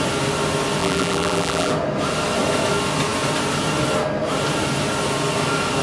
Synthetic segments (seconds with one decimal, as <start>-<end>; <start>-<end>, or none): 0.8-1.7